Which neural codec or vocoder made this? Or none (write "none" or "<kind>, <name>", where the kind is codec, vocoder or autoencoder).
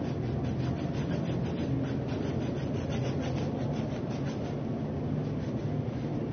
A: none